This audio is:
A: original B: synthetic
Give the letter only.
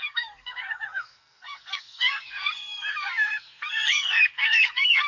B